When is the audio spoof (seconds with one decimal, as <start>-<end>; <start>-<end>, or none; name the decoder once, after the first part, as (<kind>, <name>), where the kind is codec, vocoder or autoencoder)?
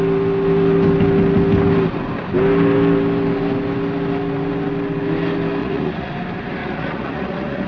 5.6-6.1 (vocoder, Vocos); 6.6-7.7